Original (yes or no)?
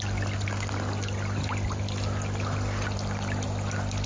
yes